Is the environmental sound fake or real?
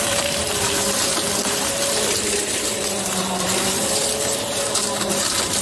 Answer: fake